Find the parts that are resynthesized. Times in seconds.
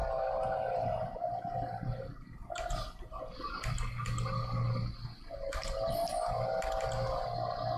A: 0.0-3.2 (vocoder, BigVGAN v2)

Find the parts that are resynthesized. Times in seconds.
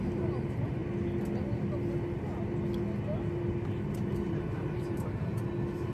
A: 0.0-0.8 (vocoder, BigVGAN v2); 4.3-5.3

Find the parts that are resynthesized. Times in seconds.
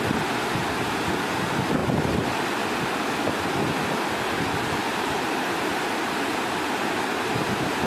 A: 0.5-1.4 (vocoder, BigVGAN v2); 4.8-7.9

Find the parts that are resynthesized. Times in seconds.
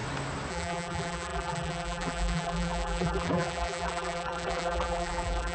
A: 0.5-5.5 (vocoder, BigVGAN v2)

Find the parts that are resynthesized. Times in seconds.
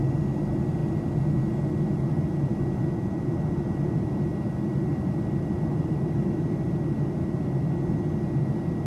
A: 5.7-6.7 (vocoder, BigVGAN v2)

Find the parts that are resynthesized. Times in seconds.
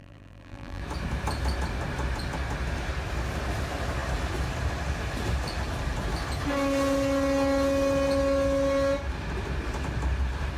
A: 0.0-0.8 (vocoder, BigVGAN v2)